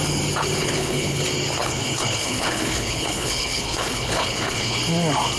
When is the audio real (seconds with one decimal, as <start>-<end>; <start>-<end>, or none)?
0.0-0.6; 1.2-1.6; 4.8-5.4